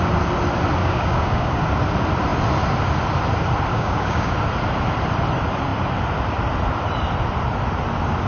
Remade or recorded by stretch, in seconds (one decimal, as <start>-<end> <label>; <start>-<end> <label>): 0.0-0.8 recorded; 0.8-1.5 remade; 1.5-3.7 recorded; 3.7-4.3 remade; 4.3-8.3 recorded